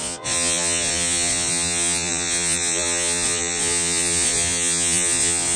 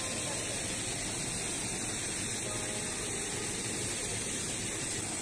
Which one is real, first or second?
second